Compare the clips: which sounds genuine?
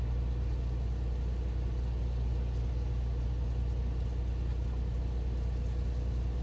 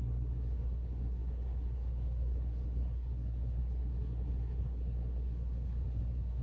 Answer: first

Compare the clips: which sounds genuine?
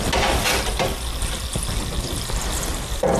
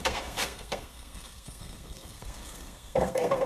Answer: first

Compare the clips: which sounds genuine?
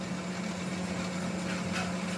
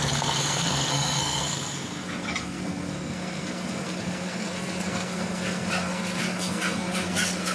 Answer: first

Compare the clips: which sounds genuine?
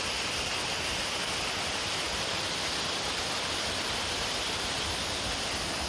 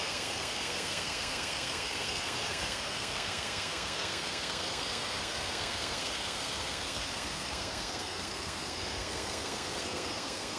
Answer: first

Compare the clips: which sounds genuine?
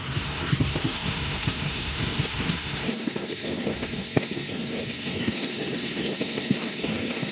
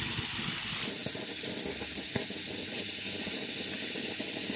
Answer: second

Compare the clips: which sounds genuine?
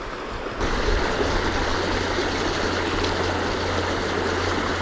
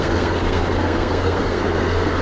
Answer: first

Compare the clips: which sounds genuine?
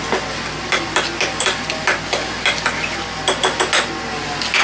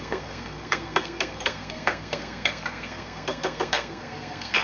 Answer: first